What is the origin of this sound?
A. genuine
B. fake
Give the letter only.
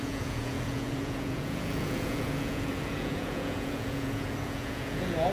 B